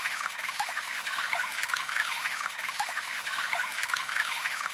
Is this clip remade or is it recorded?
remade